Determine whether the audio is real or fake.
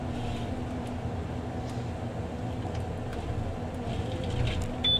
real